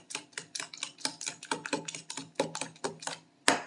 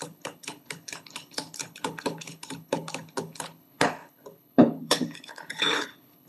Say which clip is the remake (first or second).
second